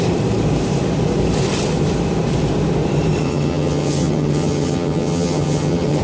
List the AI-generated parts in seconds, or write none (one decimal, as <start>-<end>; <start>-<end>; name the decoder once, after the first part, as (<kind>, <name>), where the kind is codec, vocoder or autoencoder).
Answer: 3.2-6.0 (vocoder, HiFi-GAN)